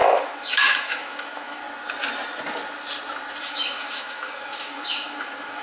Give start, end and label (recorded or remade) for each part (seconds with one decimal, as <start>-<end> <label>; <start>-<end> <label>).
0.0-1.6 remade; 1.6-3.4 recorded; 3.4-5.6 remade